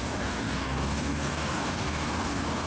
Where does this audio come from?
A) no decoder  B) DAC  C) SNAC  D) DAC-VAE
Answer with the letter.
B